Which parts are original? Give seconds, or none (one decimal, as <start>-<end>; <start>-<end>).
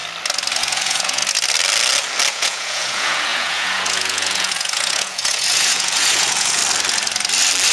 0.0-0.6; 1.2-2.3; 6.6-7.7